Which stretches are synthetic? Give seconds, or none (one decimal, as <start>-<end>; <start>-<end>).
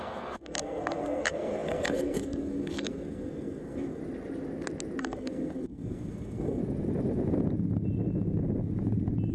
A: 0.0-4.0; 5.0-6.6